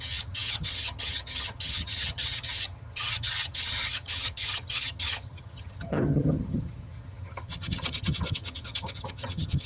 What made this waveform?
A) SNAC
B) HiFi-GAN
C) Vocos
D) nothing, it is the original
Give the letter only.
B